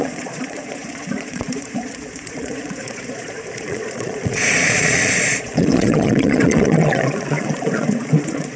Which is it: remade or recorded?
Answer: remade